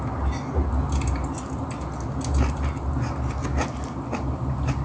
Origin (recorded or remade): recorded